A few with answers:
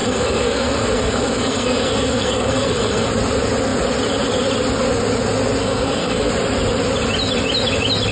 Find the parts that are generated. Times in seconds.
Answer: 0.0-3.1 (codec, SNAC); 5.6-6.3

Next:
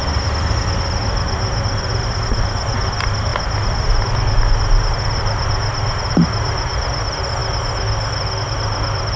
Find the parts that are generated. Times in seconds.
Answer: none

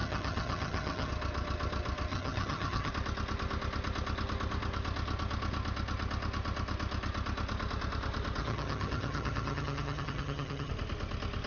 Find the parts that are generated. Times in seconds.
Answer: 0.0-1.1 (vocoder, HiFi-GAN); 2.1-2.9; 8.4-10.7

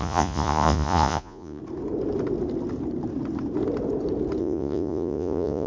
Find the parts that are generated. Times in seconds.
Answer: 0.0-1.6 (vocoder, Vocos); 4.4-5.7

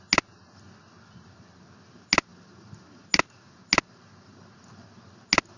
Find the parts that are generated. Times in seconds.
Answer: none